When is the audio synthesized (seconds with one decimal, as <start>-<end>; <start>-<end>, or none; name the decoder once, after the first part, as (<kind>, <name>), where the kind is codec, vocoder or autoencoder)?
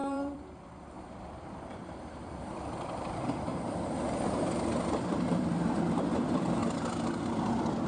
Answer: 0.0-3.5 (vocoder, BigVGAN v2); 6.1-6.6; 7.2-7.9